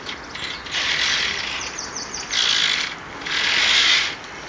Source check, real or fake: real